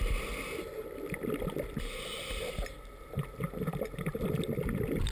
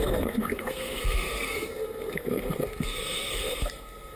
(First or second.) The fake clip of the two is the second